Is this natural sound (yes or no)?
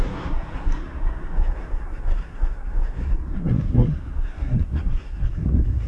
no